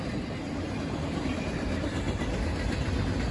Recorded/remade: recorded